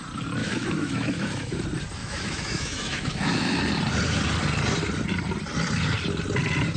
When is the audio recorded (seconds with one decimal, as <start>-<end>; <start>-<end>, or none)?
0.0-0.4; 1.6-2.0; 3.6-6.8